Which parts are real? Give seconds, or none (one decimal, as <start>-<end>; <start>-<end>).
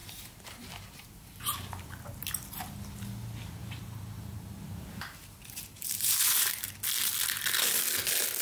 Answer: 1.9-3.6; 6.7-8.4